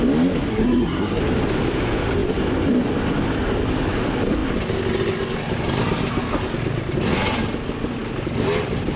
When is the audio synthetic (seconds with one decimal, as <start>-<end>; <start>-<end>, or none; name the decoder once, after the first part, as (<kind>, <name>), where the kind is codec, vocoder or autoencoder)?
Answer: 0.5-1.2 (codec, SNAC)